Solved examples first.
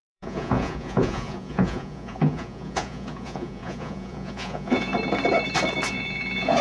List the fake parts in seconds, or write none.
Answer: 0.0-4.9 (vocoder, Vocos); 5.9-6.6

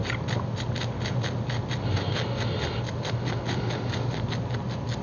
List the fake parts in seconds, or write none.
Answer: none

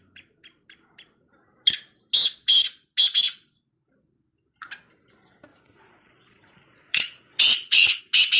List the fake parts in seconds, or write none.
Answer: 5.5-8.0 (vocoder, Vocos)

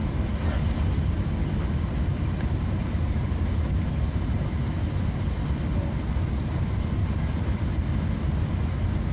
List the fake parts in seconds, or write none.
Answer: 2.1-4.7 (vocoder, BigVGAN v2); 7.0-7.5

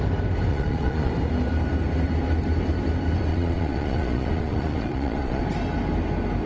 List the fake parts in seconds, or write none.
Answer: 0.5-1.1 (vocoder, Vocos); 3.3-5.4

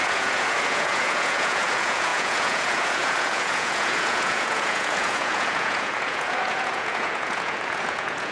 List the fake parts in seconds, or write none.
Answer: 0.0-8.3 (vocoder, Vocos)

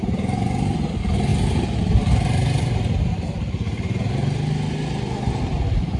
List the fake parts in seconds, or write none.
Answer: 1.3-1.8 (vocoder, BigVGAN v2)